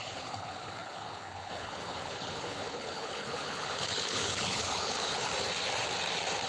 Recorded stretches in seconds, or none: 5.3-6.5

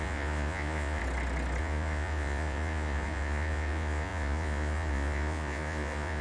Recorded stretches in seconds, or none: 1.0-1.6

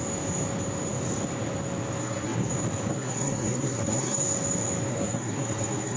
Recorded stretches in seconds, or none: 0.0-2.0; 2.5-2.9; 4.2-4.9

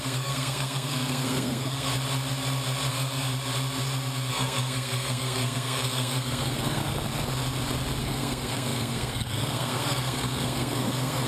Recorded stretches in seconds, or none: 1.9-2.9; 3.3-4.3; 6.8-8.0

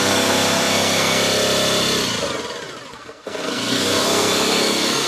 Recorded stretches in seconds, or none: 1.2-2.9

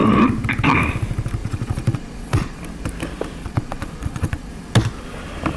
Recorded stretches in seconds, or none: 0.0-1.4; 2.6-3.4; 4.5-5.6

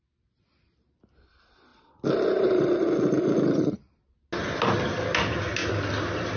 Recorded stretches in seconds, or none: 0.0-1.7; 4.2-5.6

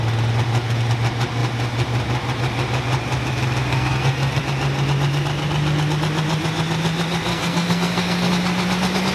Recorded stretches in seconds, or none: 0.0-3.7; 4.4-7.3; 8.3-9.1